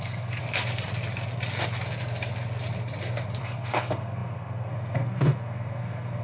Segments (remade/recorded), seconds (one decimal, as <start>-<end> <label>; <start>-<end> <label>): 0.0-0.4 remade; 0.4-3.4 recorded; 3.4-6.2 remade